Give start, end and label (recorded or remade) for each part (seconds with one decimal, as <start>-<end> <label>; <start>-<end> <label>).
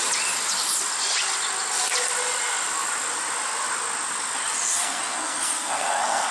0.0-4.8 recorded; 4.8-6.3 remade